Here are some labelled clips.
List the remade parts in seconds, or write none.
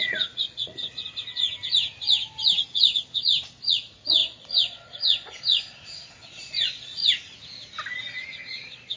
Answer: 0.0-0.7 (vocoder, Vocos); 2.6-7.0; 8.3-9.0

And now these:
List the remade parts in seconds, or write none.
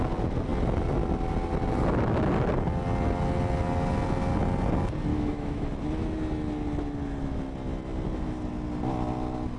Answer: 5.1-5.7 (autoencoder, DAC-VAE)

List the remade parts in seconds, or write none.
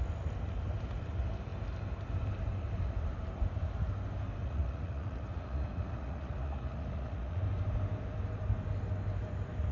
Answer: 4.4-7.4 (vocoder, Vocos)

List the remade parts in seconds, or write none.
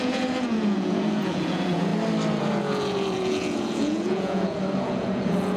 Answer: 0.0-1.9 (vocoder, Vocos); 2.4-5.6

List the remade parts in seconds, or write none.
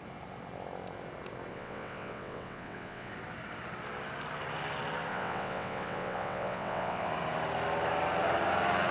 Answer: 1.5-3.1 (vocoder, WaveNeXt); 5.1-7.1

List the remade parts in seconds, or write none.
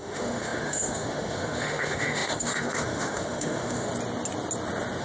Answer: 0.0-3.9 (autoencoder, DAC-VAE)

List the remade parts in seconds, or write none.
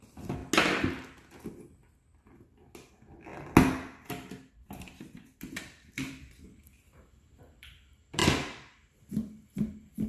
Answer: 0.0-0.4 (vocoder, BigVGAN v2); 2.9-3.3; 4.5-8.2; 9.1-10.1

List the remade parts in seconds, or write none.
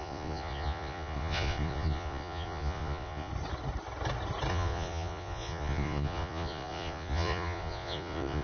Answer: 0.0-3.3 (vocoder, Vocos); 4.5-8.4